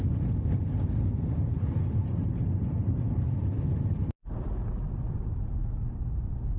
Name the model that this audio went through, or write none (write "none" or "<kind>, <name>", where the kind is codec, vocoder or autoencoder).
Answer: none